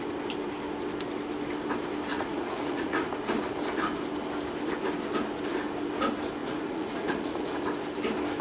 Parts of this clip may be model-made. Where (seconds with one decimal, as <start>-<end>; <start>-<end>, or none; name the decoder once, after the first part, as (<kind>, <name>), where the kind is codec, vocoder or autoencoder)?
2.1-3.1 (vocoder, Vocos); 6.4-7.6